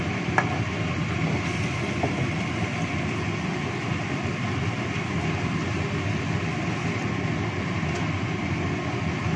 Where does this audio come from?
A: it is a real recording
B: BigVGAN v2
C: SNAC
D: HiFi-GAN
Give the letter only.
A